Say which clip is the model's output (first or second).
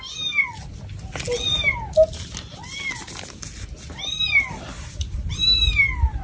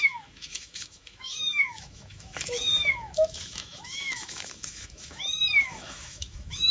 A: second